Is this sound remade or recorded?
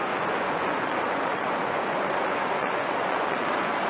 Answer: remade